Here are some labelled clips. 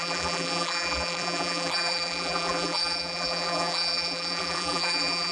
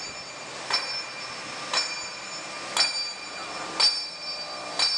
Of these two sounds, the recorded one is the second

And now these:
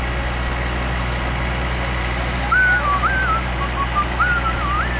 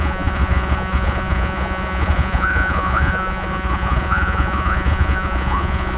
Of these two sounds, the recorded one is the first